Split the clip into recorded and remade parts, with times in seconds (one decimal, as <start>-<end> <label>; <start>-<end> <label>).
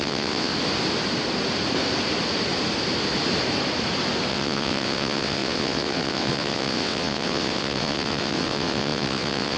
0.0-0.5 remade; 0.5-4.3 recorded; 4.3-9.6 remade